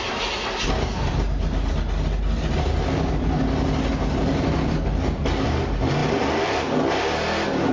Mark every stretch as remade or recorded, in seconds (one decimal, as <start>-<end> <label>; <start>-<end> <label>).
0.0-7.7 recorded